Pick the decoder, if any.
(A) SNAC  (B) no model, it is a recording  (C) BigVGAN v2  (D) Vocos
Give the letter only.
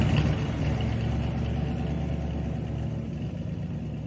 B